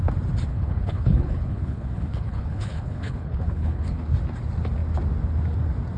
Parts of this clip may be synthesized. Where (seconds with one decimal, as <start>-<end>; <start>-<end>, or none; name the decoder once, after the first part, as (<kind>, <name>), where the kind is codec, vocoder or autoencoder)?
0.5-4.1 (codec, HILCodec)

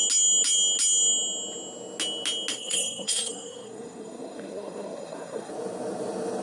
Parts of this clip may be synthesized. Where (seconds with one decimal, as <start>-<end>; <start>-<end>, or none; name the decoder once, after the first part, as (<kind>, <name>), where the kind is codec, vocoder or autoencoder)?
2.5-5.5 (codec, SNAC)

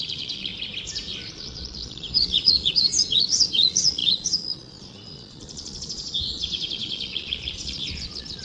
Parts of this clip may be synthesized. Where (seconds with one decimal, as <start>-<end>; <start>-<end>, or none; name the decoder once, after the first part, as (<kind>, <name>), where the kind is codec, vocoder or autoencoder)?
0.0-0.5 (vocoder, Vocos); 1.2-8.4

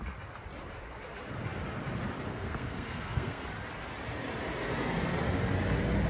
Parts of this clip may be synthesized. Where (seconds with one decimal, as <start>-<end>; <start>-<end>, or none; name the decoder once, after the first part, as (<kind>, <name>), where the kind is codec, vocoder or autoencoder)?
2.3-3.4 (codec, SNAC)

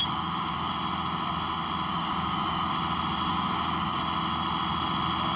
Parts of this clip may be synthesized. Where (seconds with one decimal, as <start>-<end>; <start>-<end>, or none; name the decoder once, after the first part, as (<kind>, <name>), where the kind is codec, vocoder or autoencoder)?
0.0-0.7 (codec, DAC); 1.9-2.7; 3.3-4.0